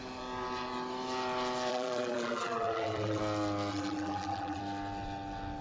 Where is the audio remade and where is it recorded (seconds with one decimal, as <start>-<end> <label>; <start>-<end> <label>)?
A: 0.0-1.7 recorded; 1.7-3.2 remade; 3.2-3.7 recorded; 3.7-4.6 remade; 4.6-5.6 recorded